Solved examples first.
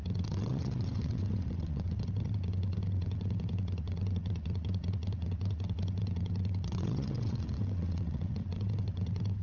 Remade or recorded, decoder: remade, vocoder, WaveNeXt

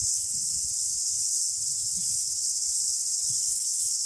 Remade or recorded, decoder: remade, vocoder, WaveNeXt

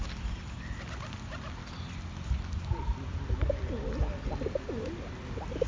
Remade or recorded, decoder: recorded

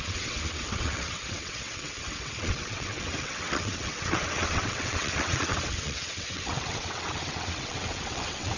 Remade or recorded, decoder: remade, vocoder, WaveNeXt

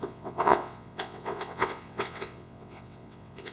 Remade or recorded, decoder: remade, vocoder, WaveNeXt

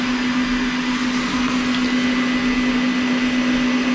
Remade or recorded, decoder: recorded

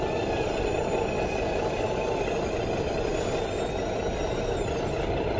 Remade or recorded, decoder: recorded